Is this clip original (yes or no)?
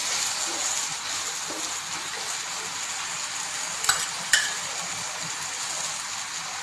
yes